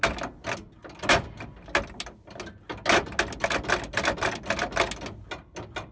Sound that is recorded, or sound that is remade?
recorded